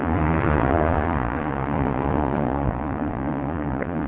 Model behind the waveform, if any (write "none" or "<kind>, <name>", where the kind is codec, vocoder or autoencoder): vocoder, Vocos